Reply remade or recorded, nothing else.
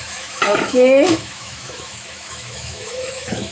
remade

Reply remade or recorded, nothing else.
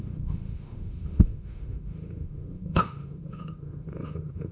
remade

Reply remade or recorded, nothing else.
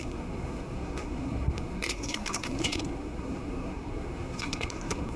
remade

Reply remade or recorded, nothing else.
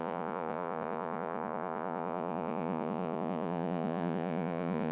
remade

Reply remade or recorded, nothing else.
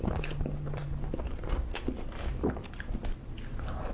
recorded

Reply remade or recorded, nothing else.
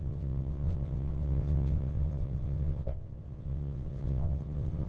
remade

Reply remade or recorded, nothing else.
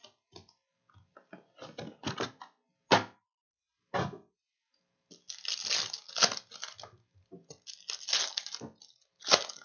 recorded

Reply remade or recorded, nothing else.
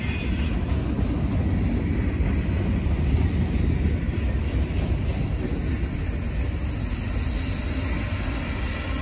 recorded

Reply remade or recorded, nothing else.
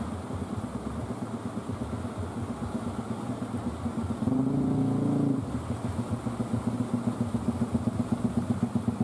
recorded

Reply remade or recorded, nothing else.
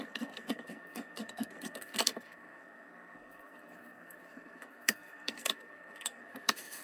remade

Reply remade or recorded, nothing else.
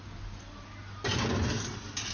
recorded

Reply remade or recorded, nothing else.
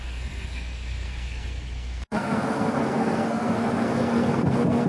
remade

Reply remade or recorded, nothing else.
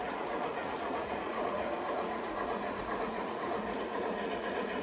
remade